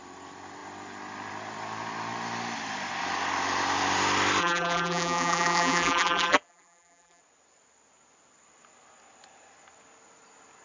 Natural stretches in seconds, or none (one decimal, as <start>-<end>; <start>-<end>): 0.0-4.4; 7.2-10.6